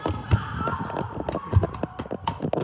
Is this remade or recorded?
recorded